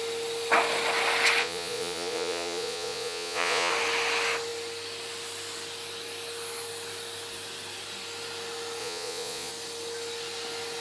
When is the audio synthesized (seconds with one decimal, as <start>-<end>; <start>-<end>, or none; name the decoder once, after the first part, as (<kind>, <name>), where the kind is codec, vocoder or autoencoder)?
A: 1.4-3.7 (vocoder, Vocos); 8.8-9.5